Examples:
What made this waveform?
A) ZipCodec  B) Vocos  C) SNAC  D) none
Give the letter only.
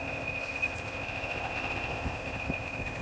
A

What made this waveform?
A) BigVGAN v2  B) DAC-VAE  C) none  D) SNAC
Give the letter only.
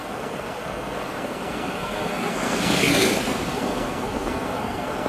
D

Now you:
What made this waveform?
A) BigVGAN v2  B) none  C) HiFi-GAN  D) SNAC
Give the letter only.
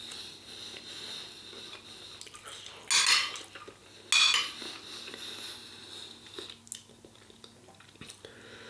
B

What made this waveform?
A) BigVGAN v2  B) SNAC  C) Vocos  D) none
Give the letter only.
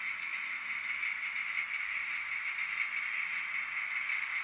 D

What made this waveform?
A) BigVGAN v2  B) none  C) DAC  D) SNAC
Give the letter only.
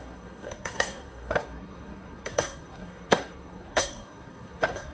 D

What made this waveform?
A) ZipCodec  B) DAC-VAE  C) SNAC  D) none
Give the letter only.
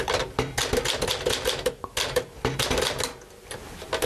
D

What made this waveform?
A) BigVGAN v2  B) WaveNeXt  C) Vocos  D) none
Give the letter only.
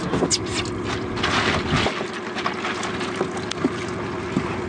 D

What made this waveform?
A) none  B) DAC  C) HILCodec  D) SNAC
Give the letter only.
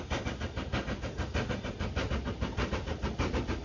A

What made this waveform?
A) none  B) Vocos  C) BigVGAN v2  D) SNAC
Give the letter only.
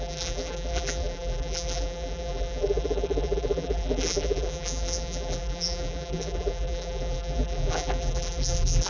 C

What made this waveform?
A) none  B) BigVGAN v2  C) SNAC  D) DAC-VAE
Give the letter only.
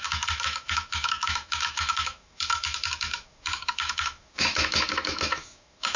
D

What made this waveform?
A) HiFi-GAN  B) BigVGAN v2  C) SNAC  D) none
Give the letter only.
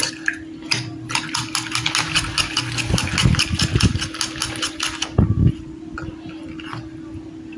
D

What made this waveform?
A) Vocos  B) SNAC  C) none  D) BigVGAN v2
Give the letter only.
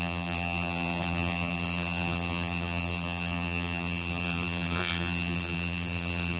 D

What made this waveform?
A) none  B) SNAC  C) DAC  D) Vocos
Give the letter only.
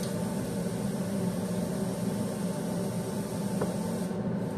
A